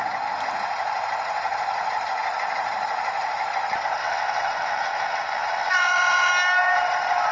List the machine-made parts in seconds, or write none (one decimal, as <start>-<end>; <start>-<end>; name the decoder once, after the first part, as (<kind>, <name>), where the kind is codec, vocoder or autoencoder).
4.0-6.3 (vocoder, WaveNeXt)

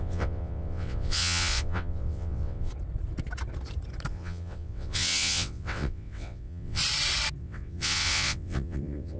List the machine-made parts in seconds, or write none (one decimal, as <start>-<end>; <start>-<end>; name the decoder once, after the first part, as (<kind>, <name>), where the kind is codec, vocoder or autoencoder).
0.0-2.7 (vocoder, WaveNeXt); 4.1-6.8; 7.4-9.2

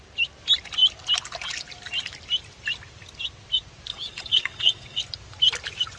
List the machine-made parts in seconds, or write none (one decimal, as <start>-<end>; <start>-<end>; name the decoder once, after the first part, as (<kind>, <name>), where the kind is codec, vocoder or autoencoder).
3.9-5.0 (vocoder, WaveNeXt)

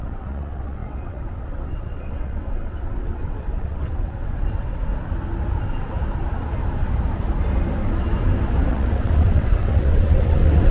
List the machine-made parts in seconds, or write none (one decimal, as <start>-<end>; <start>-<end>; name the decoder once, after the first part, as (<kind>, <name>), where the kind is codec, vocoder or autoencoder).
0.0-4.9 (vocoder, WaveNeXt); 8.7-10.7

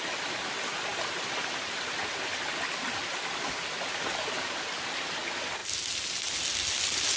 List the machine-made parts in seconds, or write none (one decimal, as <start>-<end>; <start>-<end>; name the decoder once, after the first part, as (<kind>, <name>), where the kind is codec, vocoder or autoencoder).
none

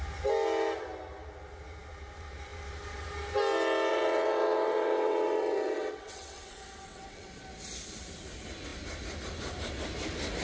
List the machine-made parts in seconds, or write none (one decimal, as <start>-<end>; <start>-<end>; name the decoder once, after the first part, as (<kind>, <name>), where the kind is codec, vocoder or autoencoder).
3.9-7.3 (vocoder, WaveNeXt)

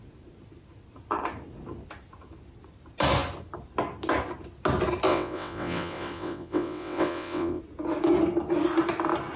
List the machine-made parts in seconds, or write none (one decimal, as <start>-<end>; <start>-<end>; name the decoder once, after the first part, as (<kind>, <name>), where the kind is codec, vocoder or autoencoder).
5.1-7.6 (vocoder, WaveNeXt)

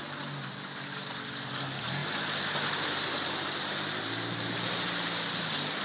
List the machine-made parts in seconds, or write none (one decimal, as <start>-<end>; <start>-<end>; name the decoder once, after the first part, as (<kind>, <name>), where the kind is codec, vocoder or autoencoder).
none